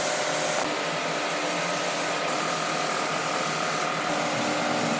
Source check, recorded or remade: recorded